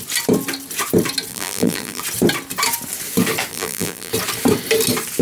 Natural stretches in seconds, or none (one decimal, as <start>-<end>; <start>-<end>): 0.0-1.3; 2.0-3.5; 4.1-5.2